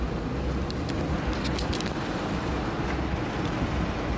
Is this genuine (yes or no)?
yes